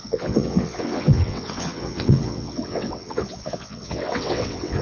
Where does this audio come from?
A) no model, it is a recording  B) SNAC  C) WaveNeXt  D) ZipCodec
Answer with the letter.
C